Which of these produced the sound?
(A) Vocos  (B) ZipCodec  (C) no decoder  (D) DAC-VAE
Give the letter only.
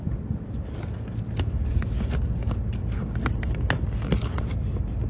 C